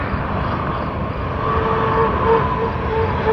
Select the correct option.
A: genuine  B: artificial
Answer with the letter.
A